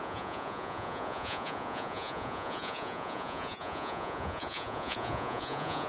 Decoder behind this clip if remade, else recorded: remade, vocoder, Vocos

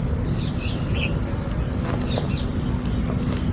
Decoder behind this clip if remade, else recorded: recorded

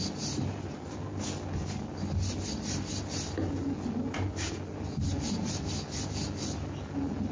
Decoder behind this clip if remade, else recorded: recorded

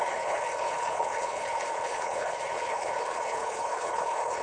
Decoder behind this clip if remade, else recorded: remade, codec, HILCodec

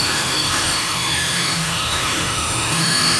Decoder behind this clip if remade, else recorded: remade, autoencoder, DAC-VAE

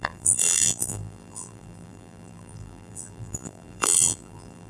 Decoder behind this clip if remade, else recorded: remade, vocoder, BigVGAN v2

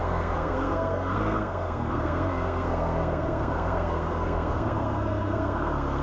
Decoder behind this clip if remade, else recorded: remade, codec, SNAC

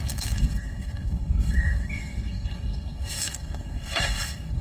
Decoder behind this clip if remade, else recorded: remade, codec, SNAC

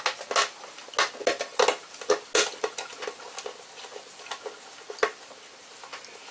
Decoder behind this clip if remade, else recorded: recorded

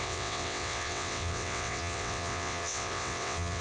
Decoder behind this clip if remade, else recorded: remade, vocoder, WaveNeXt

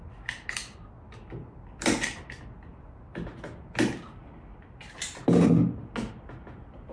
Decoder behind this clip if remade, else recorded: recorded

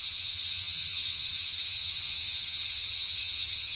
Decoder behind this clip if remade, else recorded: remade, vocoder, HiFi-GAN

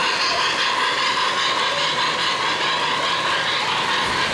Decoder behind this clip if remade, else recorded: recorded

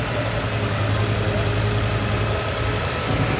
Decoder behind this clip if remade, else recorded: recorded